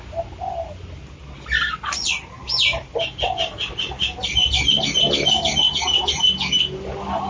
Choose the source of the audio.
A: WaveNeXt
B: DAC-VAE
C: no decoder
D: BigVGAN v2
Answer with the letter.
C